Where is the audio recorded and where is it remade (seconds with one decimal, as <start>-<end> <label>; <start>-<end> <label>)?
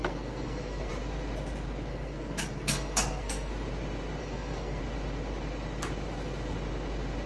0.0-0.9 remade; 0.9-1.9 recorded; 1.9-3.5 remade; 3.5-4.2 recorded; 4.2-4.8 remade; 4.8-7.3 recorded